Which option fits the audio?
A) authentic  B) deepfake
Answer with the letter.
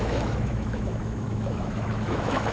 B